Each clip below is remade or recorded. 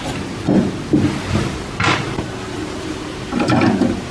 recorded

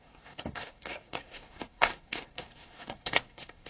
remade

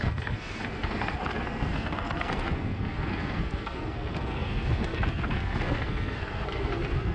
remade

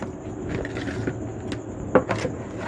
recorded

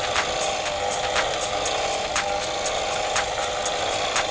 recorded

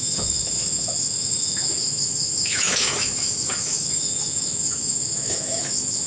remade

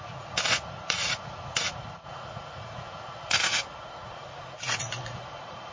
remade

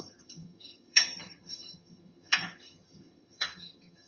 remade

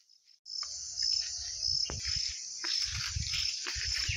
recorded